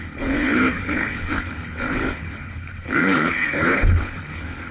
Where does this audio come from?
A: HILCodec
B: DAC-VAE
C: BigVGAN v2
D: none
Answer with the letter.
A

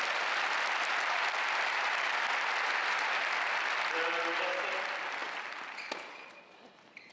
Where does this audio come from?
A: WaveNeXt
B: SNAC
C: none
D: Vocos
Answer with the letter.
C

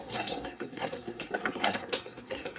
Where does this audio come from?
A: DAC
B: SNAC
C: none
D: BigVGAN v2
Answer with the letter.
B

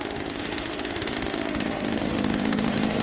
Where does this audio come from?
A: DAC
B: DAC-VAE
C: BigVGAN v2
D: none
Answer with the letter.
B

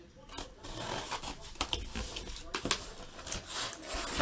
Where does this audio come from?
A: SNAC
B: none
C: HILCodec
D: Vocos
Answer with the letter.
B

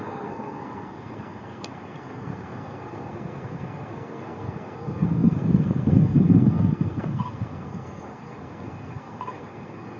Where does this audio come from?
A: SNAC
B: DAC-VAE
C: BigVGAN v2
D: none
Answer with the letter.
A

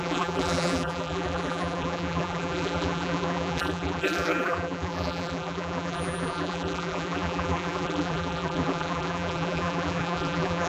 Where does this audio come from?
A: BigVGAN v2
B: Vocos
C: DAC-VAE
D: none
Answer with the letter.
A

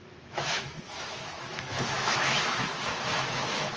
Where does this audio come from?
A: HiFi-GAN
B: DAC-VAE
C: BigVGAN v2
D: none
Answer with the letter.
B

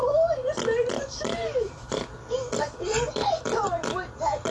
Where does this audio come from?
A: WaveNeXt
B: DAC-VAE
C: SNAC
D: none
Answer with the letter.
D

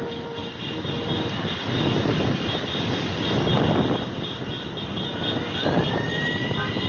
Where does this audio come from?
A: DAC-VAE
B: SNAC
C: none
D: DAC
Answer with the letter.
C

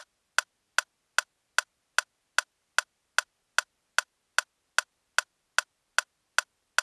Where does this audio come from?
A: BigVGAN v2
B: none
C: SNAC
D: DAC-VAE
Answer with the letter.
B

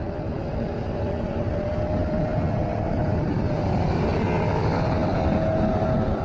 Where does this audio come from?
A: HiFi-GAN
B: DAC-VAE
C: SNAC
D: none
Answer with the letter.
D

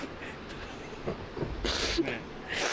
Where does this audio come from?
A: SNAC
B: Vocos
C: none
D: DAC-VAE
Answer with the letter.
C